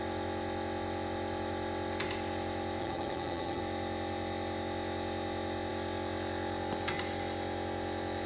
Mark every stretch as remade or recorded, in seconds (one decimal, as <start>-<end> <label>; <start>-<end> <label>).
0.0-2.8 recorded; 2.8-3.6 remade; 3.6-8.3 recorded